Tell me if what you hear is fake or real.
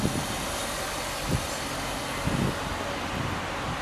real